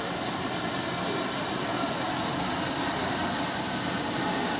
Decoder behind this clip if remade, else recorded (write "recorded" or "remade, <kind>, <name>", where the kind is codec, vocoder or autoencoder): recorded